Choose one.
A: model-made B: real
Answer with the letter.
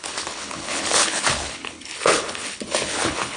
A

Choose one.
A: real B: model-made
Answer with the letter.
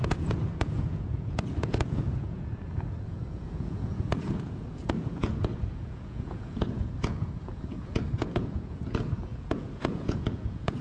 B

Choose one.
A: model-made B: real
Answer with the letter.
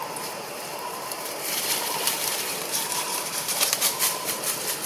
A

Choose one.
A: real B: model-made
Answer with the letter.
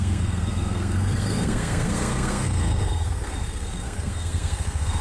B